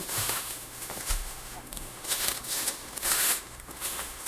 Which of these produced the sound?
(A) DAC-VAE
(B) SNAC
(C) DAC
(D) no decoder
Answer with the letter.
A